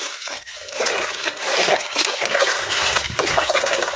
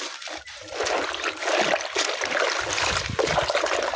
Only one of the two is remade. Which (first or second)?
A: first